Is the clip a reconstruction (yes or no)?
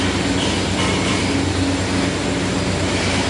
no